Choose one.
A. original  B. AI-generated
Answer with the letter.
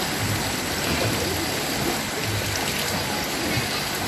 A